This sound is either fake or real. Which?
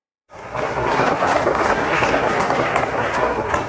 fake